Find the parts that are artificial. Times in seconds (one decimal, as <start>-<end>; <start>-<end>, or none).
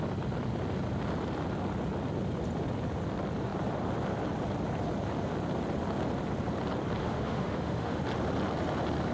7.0-8.0